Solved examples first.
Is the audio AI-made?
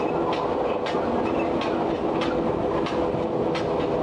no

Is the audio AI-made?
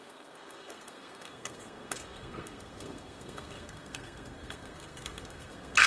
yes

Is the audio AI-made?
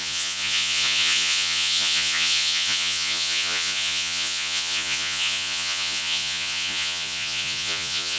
yes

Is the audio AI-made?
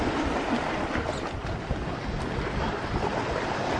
no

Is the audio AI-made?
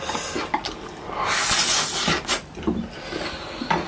no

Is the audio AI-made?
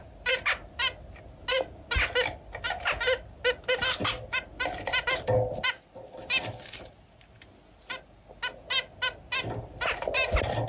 no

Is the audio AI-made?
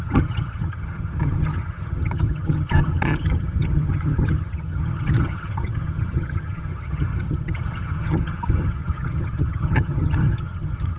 yes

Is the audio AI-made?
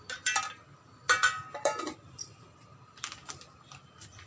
no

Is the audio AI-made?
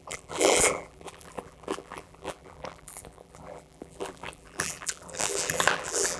yes